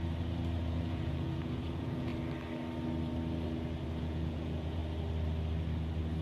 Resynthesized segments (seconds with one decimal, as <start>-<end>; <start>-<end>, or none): 0.6-2.1; 4.0-4.8